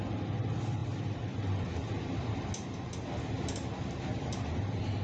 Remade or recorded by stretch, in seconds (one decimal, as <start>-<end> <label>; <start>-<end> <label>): 0.0-0.8 recorded; 0.8-2.5 remade; 2.5-5.0 recorded